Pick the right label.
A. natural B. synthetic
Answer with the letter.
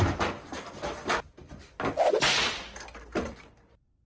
A